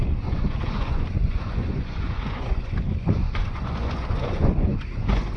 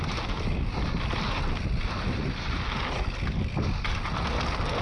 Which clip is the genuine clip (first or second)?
second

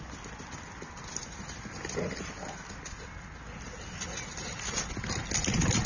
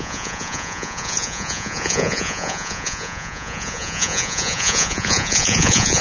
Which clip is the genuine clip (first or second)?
first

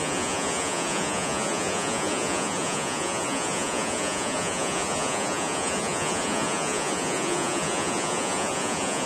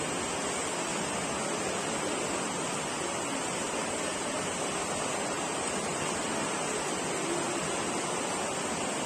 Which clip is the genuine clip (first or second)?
second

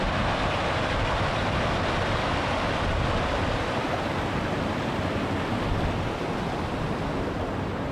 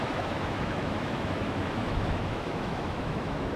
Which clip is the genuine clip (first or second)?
first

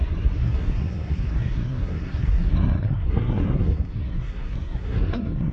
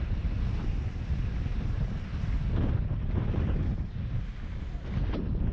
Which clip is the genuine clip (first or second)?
second